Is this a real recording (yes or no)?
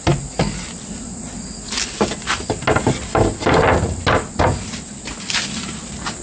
yes